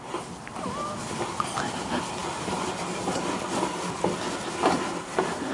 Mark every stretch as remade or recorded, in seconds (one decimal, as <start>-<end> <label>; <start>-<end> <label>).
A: 0.0-5.5 recorded